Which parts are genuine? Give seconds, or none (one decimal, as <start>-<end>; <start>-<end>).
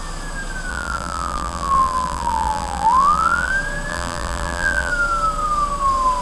0.0-0.7; 3.5-3.9; 4.9-6.2